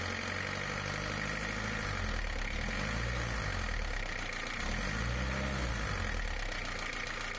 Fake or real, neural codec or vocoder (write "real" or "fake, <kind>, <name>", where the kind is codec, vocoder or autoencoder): real